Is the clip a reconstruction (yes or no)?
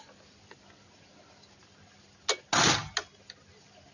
no